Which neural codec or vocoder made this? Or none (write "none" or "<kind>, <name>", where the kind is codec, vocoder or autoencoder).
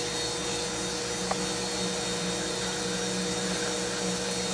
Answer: none